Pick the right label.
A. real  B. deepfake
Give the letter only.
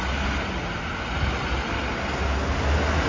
A